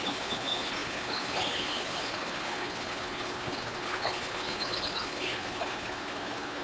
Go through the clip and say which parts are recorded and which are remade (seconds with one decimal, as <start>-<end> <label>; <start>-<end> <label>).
0.0-6.6 remade